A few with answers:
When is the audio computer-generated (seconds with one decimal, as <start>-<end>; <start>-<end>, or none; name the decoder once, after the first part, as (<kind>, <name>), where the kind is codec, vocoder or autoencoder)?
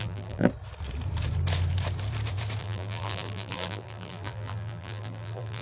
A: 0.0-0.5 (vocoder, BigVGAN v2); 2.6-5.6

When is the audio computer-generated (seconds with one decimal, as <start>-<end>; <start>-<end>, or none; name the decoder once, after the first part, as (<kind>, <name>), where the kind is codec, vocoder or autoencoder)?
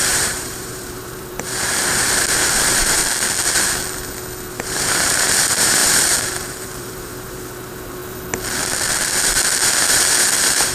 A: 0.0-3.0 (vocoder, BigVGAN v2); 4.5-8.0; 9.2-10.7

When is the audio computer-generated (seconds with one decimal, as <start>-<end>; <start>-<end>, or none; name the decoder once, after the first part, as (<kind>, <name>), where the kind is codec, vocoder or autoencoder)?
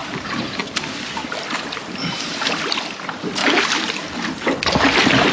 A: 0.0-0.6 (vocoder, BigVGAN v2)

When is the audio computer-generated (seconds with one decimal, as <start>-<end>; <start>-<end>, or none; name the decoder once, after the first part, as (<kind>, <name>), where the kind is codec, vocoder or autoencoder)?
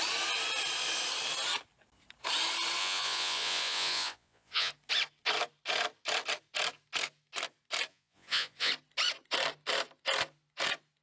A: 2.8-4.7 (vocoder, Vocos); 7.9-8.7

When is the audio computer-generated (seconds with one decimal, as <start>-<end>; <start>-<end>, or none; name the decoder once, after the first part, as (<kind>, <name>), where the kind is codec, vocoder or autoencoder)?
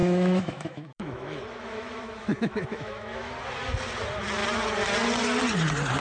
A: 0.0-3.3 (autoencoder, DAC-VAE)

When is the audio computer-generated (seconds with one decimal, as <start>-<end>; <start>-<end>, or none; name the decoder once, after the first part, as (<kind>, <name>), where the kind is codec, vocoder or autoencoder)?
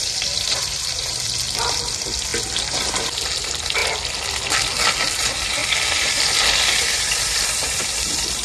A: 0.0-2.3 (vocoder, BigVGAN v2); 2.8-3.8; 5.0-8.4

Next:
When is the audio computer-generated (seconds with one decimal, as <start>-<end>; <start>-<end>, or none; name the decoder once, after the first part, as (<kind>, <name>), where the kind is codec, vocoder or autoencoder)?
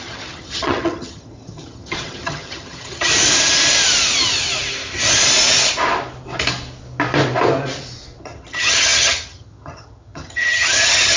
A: 0.0-3.1 (vocoder, HiFi-GAN); 8.2-11.2